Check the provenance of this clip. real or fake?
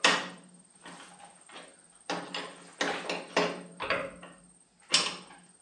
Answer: real